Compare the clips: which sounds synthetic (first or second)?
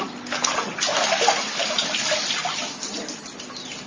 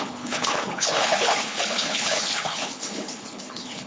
second